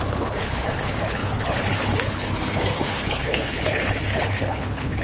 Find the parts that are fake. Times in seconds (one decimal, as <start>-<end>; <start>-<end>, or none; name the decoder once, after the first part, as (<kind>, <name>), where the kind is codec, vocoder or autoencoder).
0.0-5.0 (codec, HILCodec)